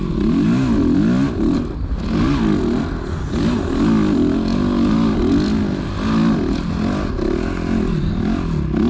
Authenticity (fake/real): real